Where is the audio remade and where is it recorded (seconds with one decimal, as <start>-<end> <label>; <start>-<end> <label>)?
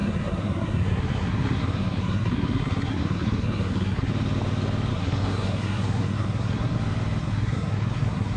0.0-4.1 remade; 4.1-4.9 recorded; 4.9-6.8 remade; 6.8-7.2 recorded; 7.2-8.4 remade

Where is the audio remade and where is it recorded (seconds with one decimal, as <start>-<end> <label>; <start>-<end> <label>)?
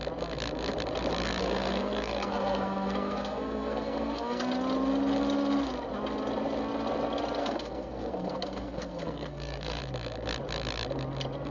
0.0-1.4 recorded; 1.4-4.4 remade; 4.4-7.4 recorded; 7.4-9.8 remade; 9.8-11.5 recorded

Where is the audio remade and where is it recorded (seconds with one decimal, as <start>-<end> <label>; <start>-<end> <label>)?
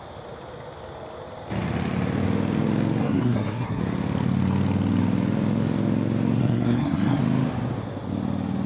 0.0-3.0 recorded; 3.0-3.8 remade; 3.8-6.4 recorded; 6.4-7.2 remade; 7.2-8.7 recorded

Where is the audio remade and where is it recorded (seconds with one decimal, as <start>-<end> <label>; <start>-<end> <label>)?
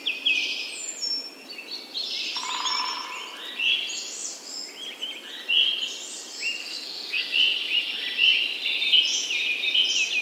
0.0-6.6 recorded; 6.6-7.2 remade; 7.2-10.2 recorded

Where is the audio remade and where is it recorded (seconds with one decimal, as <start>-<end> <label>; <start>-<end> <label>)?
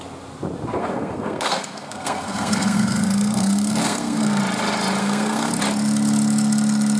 0.0-0.8 recorded; 0.8-4.4 remade; 4.4-5.0 recorded; 5.0-5.5 remade; 5.5-7.0 recorded